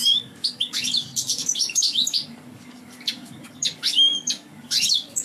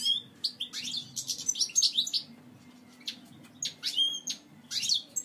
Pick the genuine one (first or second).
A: second